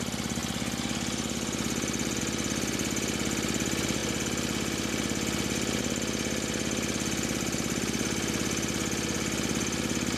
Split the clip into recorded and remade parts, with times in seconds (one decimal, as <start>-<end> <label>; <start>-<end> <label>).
0.0-10.2 recorded